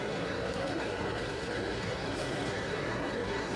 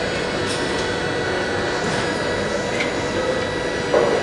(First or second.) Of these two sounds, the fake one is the first